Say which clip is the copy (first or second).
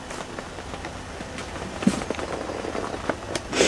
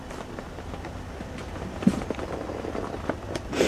second